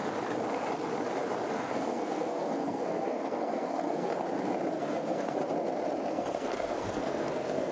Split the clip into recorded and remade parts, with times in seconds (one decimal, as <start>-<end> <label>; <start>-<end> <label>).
0.0-1.5 recorded; 1.5-4.1 remade; 4.1-4.7 recorded; 4.7-5.4 remade; 5.4-6.1 recorded; 6.1-7.7 remade